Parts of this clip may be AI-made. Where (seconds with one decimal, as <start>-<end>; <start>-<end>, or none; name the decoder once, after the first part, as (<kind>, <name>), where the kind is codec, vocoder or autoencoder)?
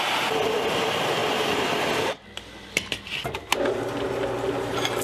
none